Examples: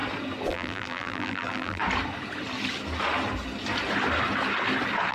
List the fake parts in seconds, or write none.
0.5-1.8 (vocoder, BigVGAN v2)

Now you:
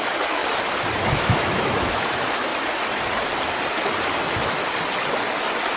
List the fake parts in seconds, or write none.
0.0-0.4 (autoencoder, DAC-VAE); 1.0-2.5

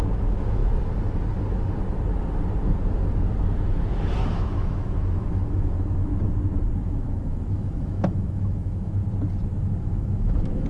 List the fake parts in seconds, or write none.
0.0-0.6 (autoencoder, DAC-VAE); 3.9-6.1; 6.8-9.0; 9.6-10.7

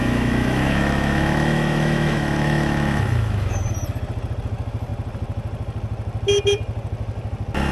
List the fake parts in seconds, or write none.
0.0-3.5 (autoencoder, DAC-VAE)

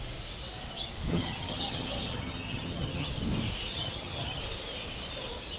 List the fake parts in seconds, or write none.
1.1-3.1 (vocoder, HiFi-GAN); 3.7-4.4

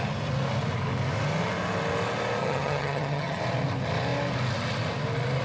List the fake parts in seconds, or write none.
2.4-3.4 (vocoder, HiFi-GAN)

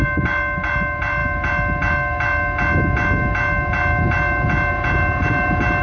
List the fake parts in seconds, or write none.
none

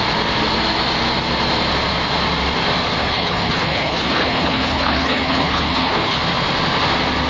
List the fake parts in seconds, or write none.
3.0-6.2 (codec, HILCodec)